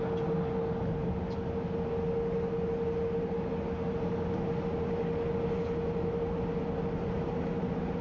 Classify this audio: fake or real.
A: real